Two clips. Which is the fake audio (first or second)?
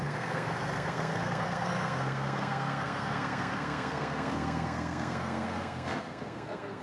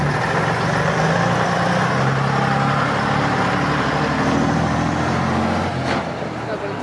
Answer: first